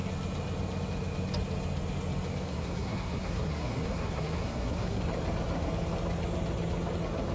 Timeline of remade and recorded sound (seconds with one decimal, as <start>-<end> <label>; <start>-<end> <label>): 0.0-2.5 recorded; 2.5-5.0 remade; 5.0-7.3 recorded